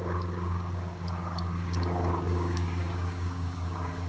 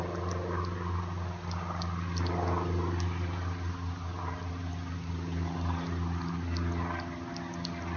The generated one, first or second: first